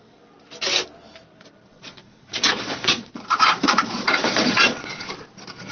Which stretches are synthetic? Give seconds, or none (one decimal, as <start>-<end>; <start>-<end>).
1.7-5.1